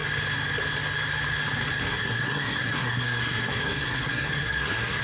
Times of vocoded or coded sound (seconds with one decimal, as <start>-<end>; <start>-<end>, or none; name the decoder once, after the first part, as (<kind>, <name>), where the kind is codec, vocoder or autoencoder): 1.8-5.0 (codec, SNAC)